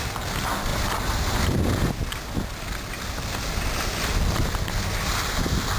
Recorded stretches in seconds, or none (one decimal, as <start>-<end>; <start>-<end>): 0.0-5.8